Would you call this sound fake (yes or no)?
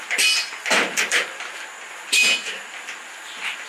no